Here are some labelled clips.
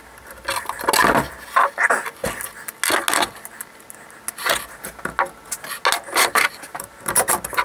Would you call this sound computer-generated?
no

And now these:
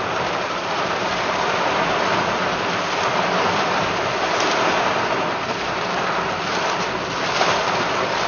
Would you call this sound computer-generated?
yes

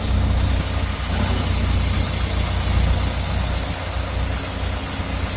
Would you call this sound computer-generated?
no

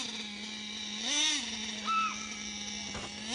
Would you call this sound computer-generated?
no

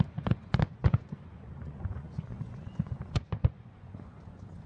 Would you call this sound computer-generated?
yes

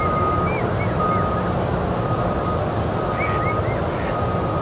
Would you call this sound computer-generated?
no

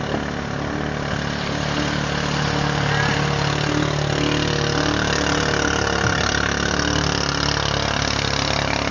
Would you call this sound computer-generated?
no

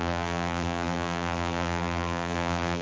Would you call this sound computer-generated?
yes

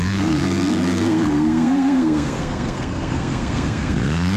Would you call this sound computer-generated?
yes